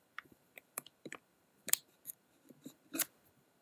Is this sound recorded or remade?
remade